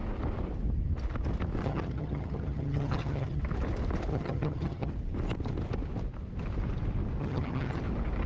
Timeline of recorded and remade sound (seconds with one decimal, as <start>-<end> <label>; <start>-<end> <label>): 0.0-1.6 recorded; 1.6-3.4 remade; 3.4-4.1 recorded; 4.1-4.9 remade; 4.9-7.2 recorded; 7.2-7.8 remade; 7.8-8.3 recorded